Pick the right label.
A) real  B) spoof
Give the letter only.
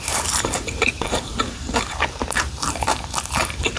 B